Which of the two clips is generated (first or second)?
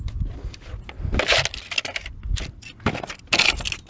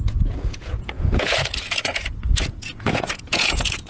second